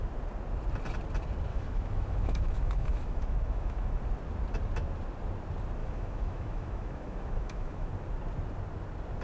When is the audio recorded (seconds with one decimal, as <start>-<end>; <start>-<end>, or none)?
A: 0.0-1.5; 4.0-5.8; 7.9-9.2